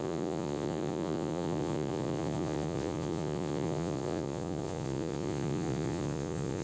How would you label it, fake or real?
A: fake